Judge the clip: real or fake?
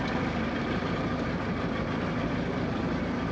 fake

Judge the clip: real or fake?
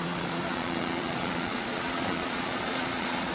fake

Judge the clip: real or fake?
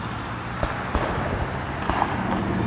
real